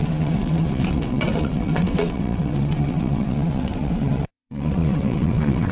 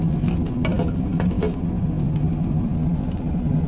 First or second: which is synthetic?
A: first